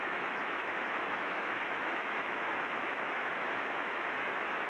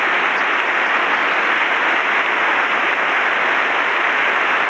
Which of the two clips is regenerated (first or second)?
first